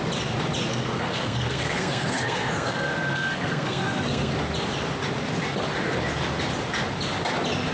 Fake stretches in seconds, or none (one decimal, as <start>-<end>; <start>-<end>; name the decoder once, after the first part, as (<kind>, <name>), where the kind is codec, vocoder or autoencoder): 0.7-4.3 (codec, SNAC)